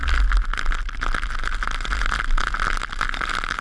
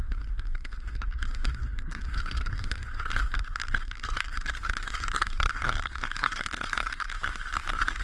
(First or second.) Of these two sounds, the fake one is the second